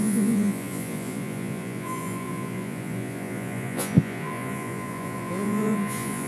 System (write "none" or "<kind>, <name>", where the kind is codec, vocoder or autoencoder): vocoder, Vocos